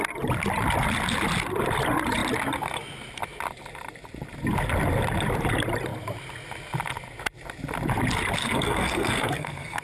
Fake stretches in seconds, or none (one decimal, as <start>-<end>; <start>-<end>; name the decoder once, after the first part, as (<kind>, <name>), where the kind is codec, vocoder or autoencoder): 8.4-9.8 (codec, SNAC)